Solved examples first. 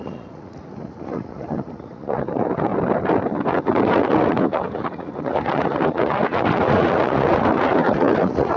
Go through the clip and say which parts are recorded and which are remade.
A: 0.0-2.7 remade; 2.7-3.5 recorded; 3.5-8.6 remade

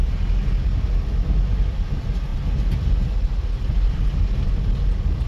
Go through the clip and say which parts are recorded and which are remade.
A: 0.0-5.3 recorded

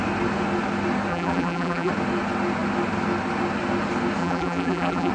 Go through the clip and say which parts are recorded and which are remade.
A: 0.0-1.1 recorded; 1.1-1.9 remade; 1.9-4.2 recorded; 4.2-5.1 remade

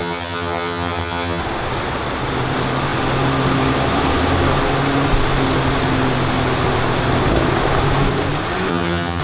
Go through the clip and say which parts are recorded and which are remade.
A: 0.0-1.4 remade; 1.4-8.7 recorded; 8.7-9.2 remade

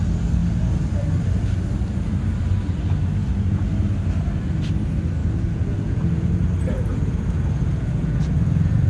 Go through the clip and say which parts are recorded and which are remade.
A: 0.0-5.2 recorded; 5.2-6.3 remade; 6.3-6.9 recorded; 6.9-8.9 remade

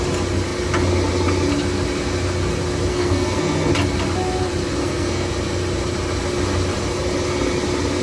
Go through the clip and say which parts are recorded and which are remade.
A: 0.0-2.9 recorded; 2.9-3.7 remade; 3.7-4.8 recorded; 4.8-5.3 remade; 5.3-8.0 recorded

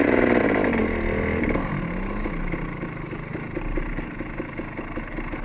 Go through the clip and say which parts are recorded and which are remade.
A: 0.0-5.4 recorded

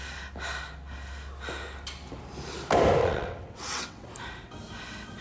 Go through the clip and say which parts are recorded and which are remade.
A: 0.0-3.0 recorded; 3.0-4.1 remade; 4.1-5.2 recorded